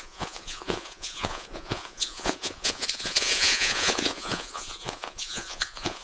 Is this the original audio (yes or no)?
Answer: no